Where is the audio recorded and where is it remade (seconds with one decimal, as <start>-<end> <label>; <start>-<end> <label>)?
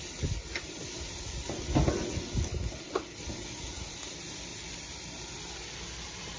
0.0-6.4 recorded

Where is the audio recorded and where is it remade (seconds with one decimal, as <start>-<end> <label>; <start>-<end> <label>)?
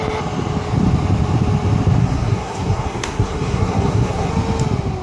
0.0-2.0 recorded; 2.0-4.3 remade; 4.3-5.0 recorded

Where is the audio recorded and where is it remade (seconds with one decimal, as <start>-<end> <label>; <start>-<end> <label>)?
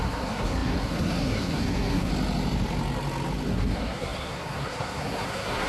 0.0-2.1 remade; 2.1-3.5 recorded; 3.5-5.7 remade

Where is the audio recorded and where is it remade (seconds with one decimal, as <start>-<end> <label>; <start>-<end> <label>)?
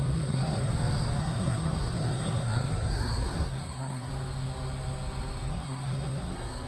0.0-0.7 remade; 0.7-1.2 recorded; 1.2-4.1 remade; 4.1-5.5 recorded; 5.5-6.7 remade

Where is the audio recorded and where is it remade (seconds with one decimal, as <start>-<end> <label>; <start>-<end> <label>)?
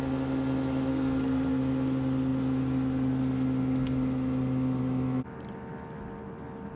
0.0-0.9 recorded; 0.9-1.6 remade; 1.6-6.8 recorded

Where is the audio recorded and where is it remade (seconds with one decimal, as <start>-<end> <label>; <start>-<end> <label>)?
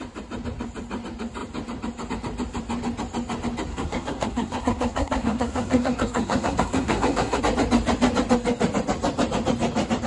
0.0-3.7 recorded; 3.7-7.4 remade; 7.4-10.1 recorded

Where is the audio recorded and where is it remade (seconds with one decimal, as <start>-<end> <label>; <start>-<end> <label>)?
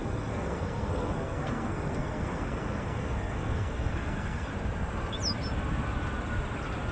0.0-4.5 remade; 4.5-6.9 recorded